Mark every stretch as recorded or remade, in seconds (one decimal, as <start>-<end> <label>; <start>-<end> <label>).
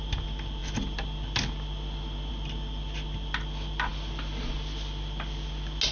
0.0-5.9 recorded